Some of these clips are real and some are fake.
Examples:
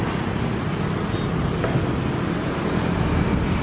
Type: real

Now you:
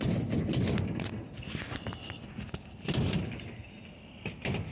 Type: real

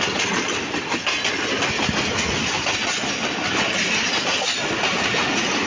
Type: real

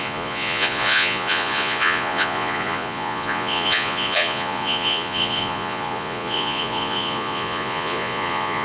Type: fake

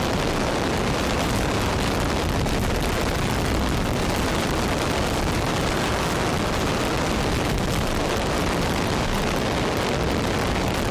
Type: real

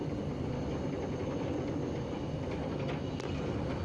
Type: real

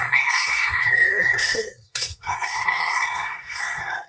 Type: fake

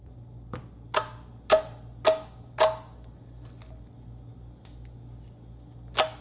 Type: real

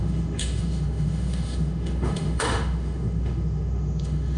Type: fake